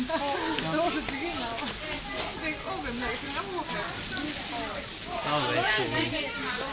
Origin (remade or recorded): recorded